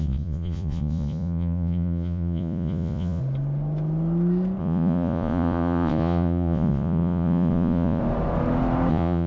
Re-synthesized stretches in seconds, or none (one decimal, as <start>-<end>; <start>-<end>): 0.0-3.2; 4.6-8.0; 8.9-9.3